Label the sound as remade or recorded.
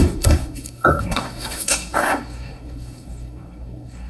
remade